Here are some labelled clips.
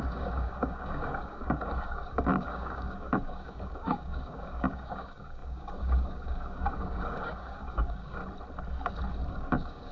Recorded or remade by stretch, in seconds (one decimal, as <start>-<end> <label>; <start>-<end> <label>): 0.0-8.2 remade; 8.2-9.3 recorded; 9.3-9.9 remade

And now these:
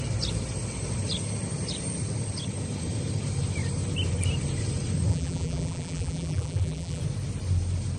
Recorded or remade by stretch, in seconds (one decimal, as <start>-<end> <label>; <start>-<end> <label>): 0.0-5.1 recorded; 5.1-7.0 remade; 7.0-8.0 recorded

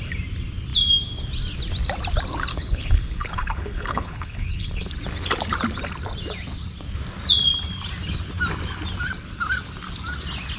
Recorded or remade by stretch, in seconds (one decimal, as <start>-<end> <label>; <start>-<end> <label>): 0.0-2.5 recorded; 2.5-4.9 remade; 4.9-10.6 recorded

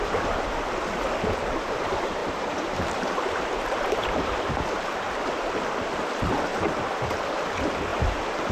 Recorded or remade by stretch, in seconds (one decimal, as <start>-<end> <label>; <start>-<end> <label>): 0.0-2.2 recorded; 2.2-4.8 remade; 4.8-6.5 recorded; 6.5-7.2 remade; 7.2-8.5 recorded

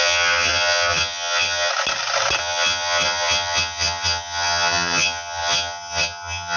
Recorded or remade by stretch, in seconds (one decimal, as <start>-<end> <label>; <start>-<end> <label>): 0.0-1.7 remade; 1.7-2.4 recorded; 2.4-6.6 remade